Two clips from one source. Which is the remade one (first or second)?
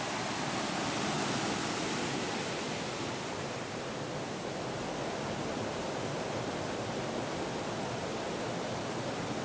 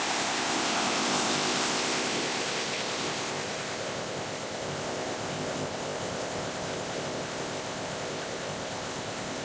second